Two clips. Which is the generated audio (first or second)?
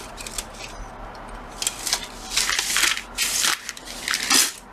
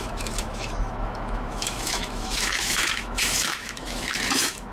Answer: second